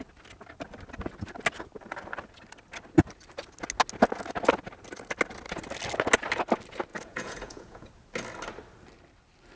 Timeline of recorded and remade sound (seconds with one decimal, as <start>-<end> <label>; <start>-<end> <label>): 0.0-6.9 recorded; 6.9-7.9 remade; 7.9-9.6 recorded